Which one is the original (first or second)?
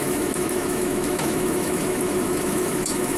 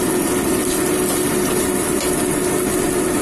second